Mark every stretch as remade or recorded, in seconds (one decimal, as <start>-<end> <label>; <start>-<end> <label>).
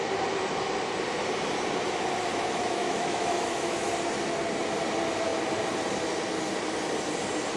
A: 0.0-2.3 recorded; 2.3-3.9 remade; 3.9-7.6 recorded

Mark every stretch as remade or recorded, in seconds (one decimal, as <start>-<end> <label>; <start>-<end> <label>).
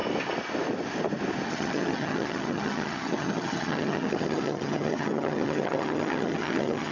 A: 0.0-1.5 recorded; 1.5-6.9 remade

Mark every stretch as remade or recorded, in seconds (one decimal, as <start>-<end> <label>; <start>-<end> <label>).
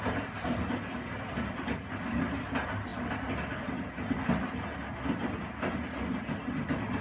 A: 0.0-7.0 recorded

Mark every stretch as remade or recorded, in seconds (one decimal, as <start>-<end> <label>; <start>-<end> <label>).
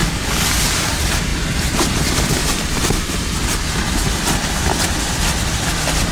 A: 0.0-0.5 remade; 0.5-6.1 recorded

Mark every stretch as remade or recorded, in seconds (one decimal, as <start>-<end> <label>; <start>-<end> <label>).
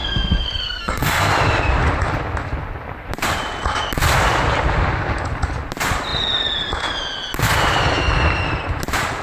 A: 0.0-1.3 remade; 1.3-9.2 recorded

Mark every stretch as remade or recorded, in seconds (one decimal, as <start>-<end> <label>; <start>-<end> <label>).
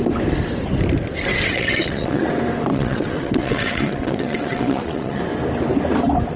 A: 0.0-1.3 recorded; 1.3-2.3 remade; 2.3-2.7 recorded; 2.7-5.2 remade; 5.2-6.4 recorded